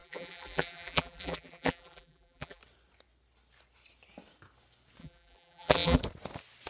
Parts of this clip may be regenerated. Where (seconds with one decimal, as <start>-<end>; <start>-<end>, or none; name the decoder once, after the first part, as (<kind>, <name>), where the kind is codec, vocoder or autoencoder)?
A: 0.0-2.6 (vocoder, BigVGAN v2); 5.0-6.0